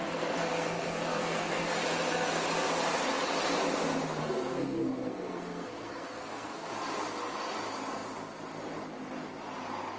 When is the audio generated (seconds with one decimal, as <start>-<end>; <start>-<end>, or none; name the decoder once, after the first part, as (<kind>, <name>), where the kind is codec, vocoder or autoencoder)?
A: 0.0-1.7 (codec, SNAC); 4.2-6.7